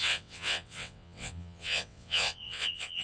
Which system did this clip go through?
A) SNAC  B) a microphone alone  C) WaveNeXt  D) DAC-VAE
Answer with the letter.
C